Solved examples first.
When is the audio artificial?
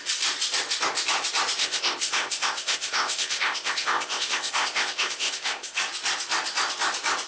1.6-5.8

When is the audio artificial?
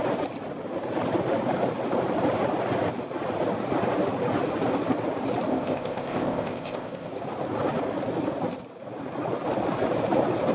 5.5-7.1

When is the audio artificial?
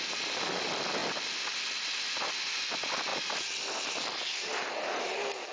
none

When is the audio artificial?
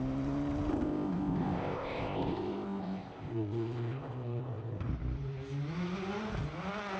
0.7-4.9